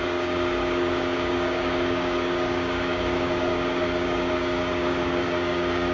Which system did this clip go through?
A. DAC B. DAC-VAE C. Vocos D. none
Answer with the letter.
A